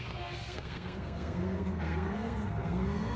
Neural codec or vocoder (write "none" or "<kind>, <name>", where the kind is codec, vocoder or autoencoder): codec, SNAC